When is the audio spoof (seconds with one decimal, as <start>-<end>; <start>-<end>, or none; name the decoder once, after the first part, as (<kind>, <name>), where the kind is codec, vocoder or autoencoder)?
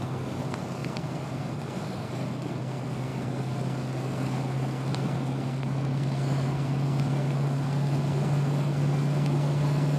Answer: 0.0-10.0 (codec, SNAC)